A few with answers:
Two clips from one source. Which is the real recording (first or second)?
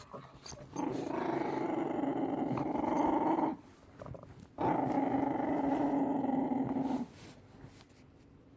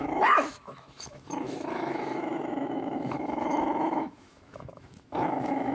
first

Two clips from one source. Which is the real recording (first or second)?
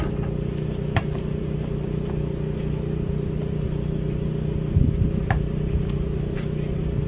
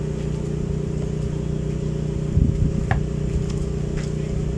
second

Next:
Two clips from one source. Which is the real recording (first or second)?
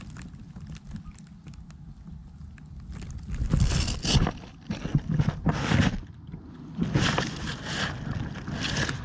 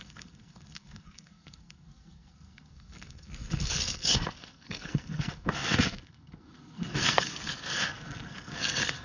first